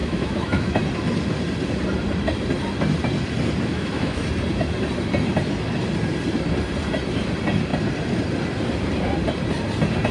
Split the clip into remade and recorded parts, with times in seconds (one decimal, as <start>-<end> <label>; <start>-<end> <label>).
0.0-0.8 remade; 0.8-3.7 recorded; 3.7-4.2 remade; 4.2-10.1 recorded